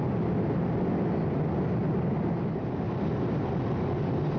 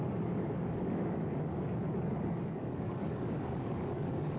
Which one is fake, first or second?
second